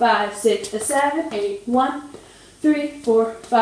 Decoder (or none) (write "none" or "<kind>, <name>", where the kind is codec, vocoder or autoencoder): none